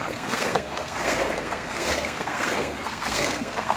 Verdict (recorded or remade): remade